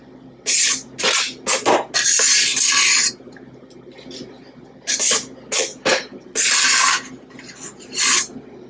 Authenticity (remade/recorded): recorded